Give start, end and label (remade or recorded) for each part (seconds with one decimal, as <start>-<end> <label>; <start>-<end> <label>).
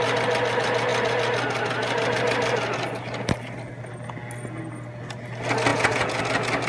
0.0-5.7 recorded; 5.7-6.2 remade; 6.2-6.7 recorded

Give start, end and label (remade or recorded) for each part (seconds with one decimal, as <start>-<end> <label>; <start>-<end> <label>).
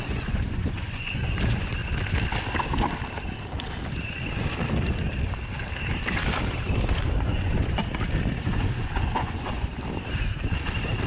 0.0-1.8 remade; 1.8-7.1 recorded; 7.1-7.8 remade; 7.8-8.4 recorded; 8.4-9.7 remade; 9.7-11.1 recorded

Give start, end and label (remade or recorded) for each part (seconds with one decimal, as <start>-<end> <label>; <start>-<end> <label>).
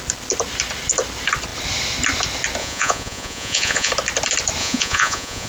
0.0-2.6 recorded; 2.6-3.9 remade; 3.9-4.6 recorded; 4.6-5.5 remade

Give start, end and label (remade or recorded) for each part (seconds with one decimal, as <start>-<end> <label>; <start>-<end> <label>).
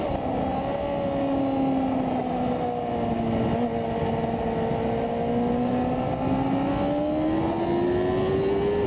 0.0-8.9 recorded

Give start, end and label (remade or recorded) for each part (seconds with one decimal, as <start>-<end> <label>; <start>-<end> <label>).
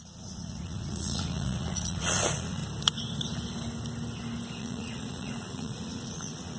0.0-2.6 remade; 2.6-4.6 recorded; 4.6-6.6 remade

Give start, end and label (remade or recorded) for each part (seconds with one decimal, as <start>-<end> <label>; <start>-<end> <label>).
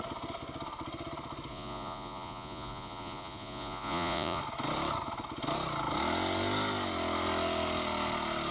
0.0-1.5 recorded; 1.5-4.4 remade; 4.4-8.5 recorded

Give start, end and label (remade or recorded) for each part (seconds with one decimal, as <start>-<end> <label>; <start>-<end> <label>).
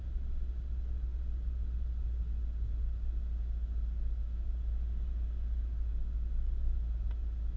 0.0-7.6 recorded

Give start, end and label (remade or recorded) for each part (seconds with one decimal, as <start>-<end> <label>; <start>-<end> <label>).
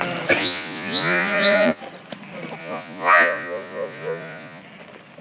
0.0-0.4 recorded; 0.4-1.8 remade; 1.8-2.6 recorded; 2.6-4.6 remade; 4.6-5.2 recorded